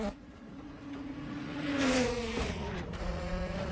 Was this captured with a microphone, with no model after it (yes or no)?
no